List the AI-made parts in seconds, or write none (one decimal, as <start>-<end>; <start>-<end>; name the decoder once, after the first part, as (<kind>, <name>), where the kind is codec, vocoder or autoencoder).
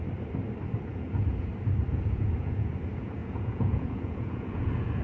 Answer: 0.9-1.5 (vocoder, Vocos); 1.9-2.7; 3.2-5.0